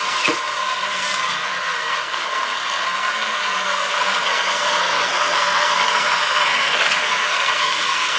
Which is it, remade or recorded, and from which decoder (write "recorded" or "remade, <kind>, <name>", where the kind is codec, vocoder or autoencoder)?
remade, codec, SNAC